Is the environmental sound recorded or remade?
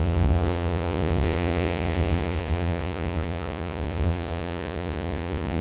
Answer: remade